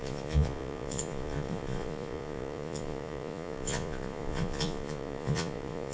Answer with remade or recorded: remade